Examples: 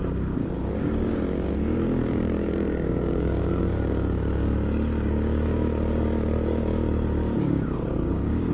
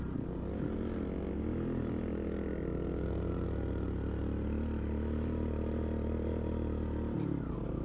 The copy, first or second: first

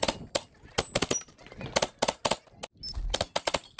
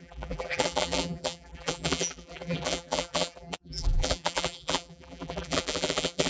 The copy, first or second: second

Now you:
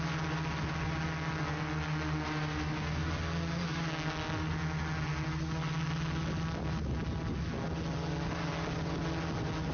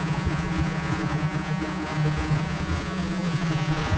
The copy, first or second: second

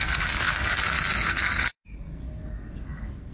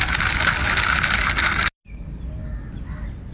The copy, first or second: first